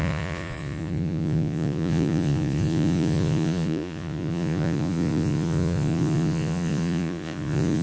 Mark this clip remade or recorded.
remade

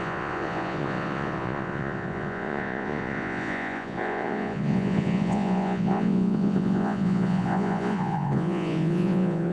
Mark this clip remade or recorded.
remade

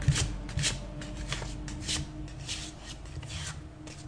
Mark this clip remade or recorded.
recorded